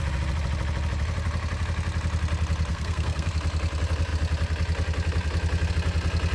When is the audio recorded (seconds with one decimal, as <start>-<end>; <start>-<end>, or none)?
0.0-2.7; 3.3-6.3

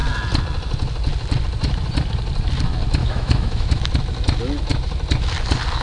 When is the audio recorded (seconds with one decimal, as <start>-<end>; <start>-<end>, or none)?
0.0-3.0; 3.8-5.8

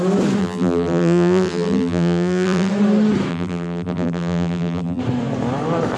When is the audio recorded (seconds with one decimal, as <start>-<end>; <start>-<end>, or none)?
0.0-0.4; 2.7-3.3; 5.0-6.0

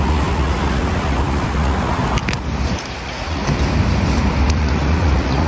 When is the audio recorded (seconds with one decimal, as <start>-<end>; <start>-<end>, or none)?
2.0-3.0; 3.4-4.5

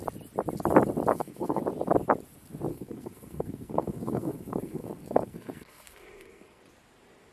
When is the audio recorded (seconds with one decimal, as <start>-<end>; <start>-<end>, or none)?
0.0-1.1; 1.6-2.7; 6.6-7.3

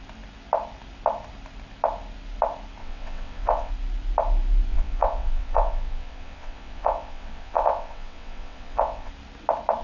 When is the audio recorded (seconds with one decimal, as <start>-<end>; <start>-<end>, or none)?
0.0-2.8; 3.7-4.7; 9.1-9.8

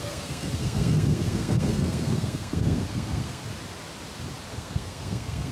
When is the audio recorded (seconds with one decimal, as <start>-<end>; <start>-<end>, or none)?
3.4-4.5

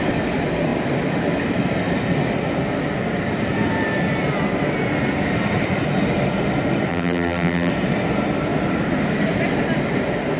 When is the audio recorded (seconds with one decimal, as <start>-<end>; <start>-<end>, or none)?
0.0-6.9; 7.7-10.4